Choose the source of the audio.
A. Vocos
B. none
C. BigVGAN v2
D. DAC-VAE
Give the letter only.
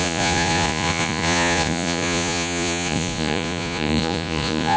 A